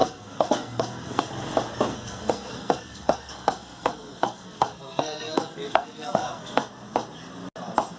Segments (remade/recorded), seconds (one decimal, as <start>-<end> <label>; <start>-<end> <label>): 0.0-1.3 remade; 1.3-1.9 recorded; 1.9-6.7 remade; 6.7-8.0 recorded

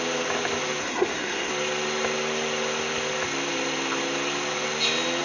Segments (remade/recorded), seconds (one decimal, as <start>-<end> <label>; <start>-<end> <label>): 0.0-0.8 recorded; 0.8-1.5 remade; 1.5-5.2 recorded

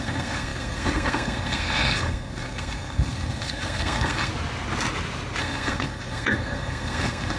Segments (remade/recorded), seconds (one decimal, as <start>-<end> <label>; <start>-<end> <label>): 0.0-4.3 remade; 4.3-5.4 recorded; 5.4-7.4 remade

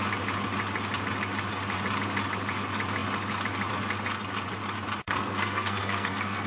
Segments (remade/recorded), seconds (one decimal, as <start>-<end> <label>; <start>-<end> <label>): 0.0-5.0 recorded; 5.0-6.5 remade

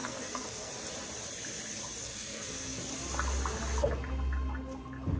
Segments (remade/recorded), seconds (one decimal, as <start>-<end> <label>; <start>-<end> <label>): 0.0-0.7 remade; 0.7-2.0 recorded; 2.0-2.8 remade; 2.8-5.2 recorded

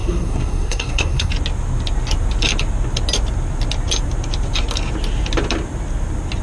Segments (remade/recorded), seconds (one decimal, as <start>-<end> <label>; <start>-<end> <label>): 0.0-1.3 remade; 1.3-6.4 recorded

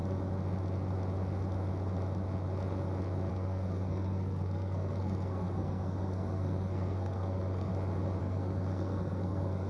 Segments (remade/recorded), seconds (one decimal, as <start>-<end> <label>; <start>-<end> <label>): 0.0-3.3 recorded; 3.3-7.7 remade; 7.7-8.2 recorded; 8.2-9.7 remade

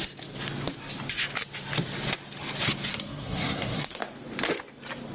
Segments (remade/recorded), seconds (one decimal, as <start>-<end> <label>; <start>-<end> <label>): 0.0-2.9 recorded; 2.9-4.0 remade; 4.0-5.1 recorded